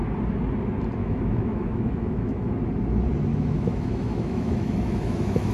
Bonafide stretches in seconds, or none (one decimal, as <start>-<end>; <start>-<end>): 0.0-1.0; 2.5-3.3